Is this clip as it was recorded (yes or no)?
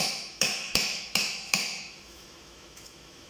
no